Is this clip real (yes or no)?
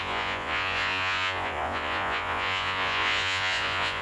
no